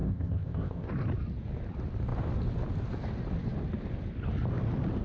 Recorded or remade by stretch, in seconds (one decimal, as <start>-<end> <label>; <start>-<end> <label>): 0.0-0.9 remade; 0.9-5.0 recorded